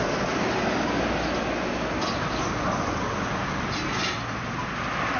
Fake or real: real